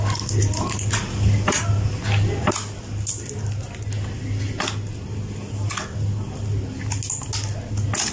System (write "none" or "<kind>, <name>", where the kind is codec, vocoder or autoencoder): none